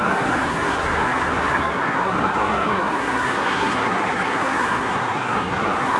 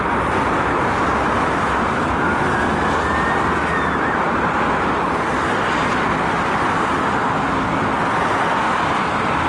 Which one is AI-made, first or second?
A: first